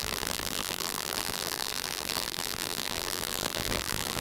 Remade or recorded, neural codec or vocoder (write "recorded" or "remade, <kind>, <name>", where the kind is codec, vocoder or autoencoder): remade, vocoder, BigVGAN v2